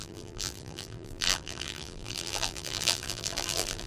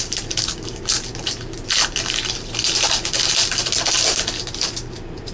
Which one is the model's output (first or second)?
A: first